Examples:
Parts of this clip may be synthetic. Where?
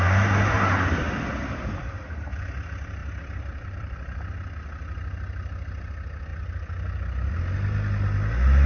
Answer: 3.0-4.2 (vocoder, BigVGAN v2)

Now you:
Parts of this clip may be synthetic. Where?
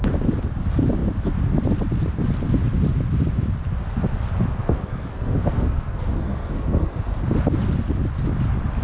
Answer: 4.6-7.0 (codec, SNAC)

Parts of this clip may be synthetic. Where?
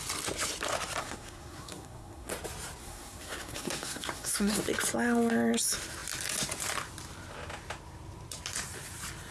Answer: 1.0-2.3 (codec, SNAC); 2.8-4.6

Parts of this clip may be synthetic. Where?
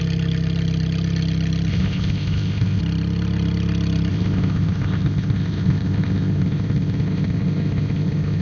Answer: 1.7-2.8 (codec, ZipCodec); 4.1-8.4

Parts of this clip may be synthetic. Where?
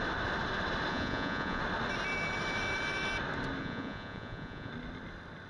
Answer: 0.9-1.6 (vocoder, Vocos); 3.6-4.7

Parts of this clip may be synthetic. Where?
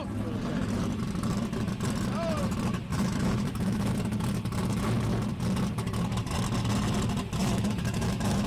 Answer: 2.9-3.9 (autoencoder, DAC-VAE); 7.4-8.5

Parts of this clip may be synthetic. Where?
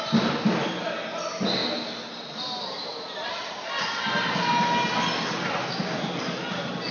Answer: none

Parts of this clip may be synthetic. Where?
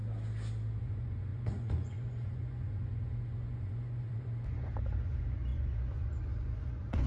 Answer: 0.8-7.1 (vocoder, Vocos)